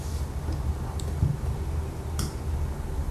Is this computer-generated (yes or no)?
no